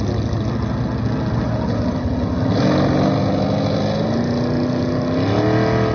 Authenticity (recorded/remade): recorded